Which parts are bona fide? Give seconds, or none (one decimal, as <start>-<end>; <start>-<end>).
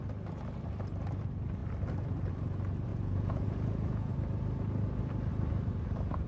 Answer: 0.0-2.9; 4.1-6.3